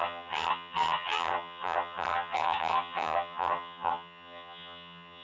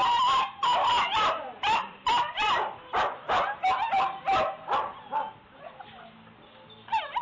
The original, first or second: second